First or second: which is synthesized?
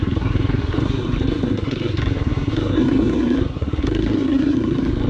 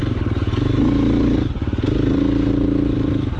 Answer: first